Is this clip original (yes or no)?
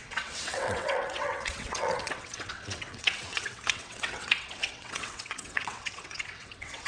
no